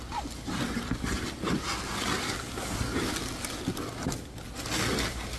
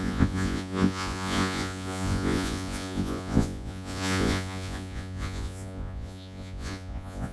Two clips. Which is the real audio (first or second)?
first